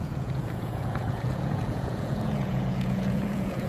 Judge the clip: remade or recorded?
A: remade